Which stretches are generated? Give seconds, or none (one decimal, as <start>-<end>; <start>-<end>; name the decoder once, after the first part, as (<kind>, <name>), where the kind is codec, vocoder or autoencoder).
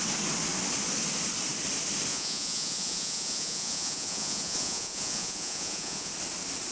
2.1-6.1 (vocoder, Vocos)